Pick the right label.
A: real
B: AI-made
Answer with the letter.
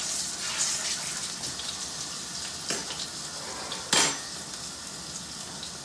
A